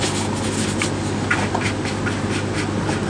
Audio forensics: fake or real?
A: real